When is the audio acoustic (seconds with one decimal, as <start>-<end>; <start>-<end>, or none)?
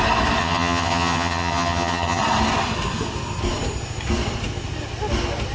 0.0-0.4; 2.2-5.5